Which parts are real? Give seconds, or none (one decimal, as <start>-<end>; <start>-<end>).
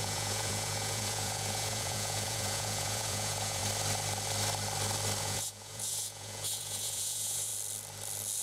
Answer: 3.6-5.2; 7.5-8.4